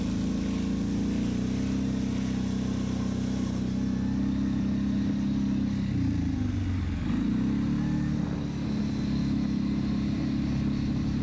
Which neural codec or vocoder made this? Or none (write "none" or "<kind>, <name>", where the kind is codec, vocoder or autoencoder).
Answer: none